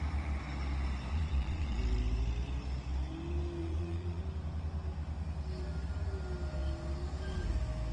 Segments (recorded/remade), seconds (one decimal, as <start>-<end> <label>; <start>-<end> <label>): 0.0-1.1 recorded; 1.1-1.8 remade; 1.8-3.6 recorded; 3.6-4.2 remade; 4.2-7.9 recorded